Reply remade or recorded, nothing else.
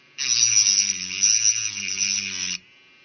recorded